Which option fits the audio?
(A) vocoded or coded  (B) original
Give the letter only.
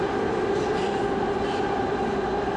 B